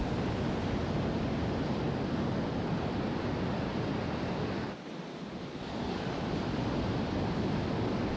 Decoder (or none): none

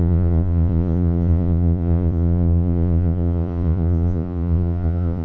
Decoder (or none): vocoder, Vocos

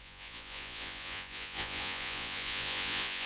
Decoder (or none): vocoder, Vocos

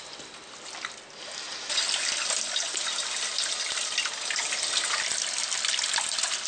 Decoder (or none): none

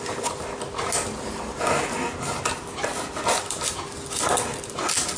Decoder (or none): none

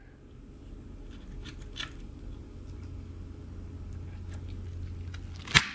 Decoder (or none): none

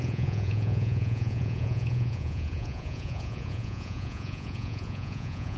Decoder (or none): vocoder, Vocos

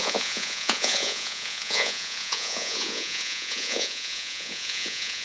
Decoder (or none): vocoder, Vocos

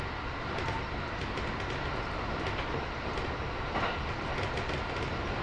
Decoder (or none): none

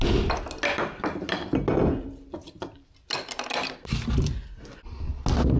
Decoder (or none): none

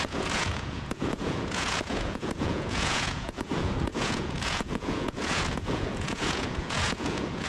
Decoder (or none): vocoder, Vocos